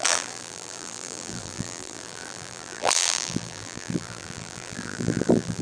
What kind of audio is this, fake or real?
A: fake